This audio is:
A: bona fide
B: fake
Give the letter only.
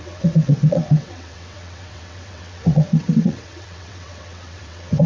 B